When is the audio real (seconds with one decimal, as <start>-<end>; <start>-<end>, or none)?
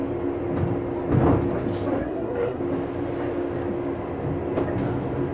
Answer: 0.0-2.0; 2.6-5.3